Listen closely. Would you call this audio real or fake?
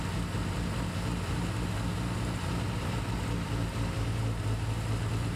real